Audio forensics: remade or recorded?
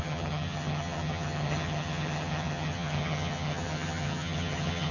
remade